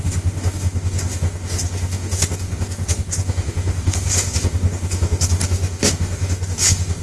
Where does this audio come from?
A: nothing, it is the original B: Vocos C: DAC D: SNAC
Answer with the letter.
C